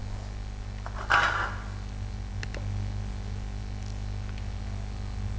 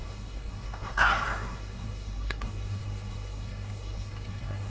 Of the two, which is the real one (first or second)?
first